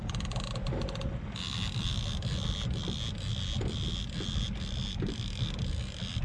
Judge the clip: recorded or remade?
recorded